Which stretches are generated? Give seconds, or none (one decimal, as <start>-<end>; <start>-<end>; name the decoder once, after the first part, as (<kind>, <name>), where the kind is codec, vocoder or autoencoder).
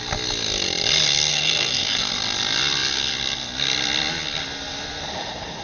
1.3-2.1 (codec, SNAC)